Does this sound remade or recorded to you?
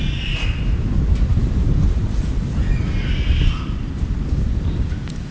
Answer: recorded